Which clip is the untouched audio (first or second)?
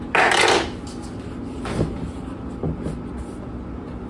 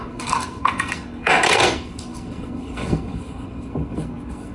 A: first